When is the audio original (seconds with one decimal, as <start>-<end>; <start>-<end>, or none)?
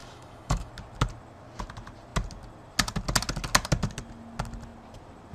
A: 0.7-5.3